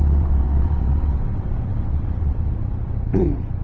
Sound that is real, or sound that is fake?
fake